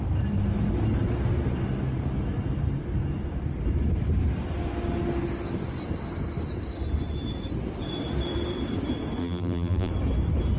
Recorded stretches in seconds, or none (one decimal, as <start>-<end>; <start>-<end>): 0.0-9.2; 9.9-10.6